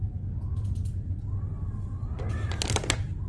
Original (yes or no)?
yes